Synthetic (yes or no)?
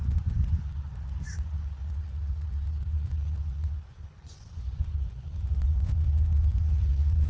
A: yes